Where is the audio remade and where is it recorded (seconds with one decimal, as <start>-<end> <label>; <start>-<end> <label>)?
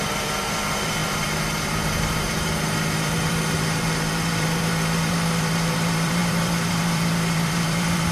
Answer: 0.0-8.1 remade